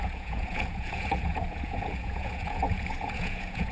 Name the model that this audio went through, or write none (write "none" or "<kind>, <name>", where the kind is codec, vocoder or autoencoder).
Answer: vocoder, Vocos